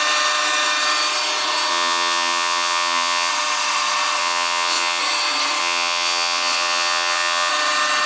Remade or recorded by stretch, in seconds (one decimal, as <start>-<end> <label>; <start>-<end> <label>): 0.0-1.7 recorded; 1.7-3.3 remade; 3.3-4.2 recorded; 4.2-5.0 remade; 5.0-5.6 recorded; 5.6-7.5 remade; 7.5-8.1 recorded